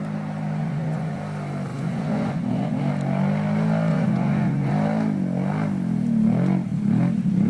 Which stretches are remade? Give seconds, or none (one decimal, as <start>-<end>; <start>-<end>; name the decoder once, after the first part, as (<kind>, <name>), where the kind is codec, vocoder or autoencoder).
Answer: 0.6-1.2 (vocoder, Vocos); 1.7-2.8; 3.9-4.7